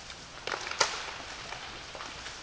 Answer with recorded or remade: recorded